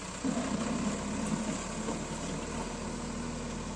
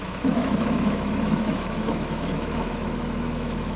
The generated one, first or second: second